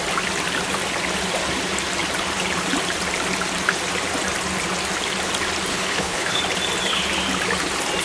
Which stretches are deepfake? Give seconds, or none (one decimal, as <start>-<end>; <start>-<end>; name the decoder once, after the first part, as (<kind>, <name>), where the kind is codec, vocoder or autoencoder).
5.7-6.4 (codec, HILCodec)